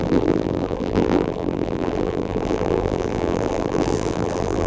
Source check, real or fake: fake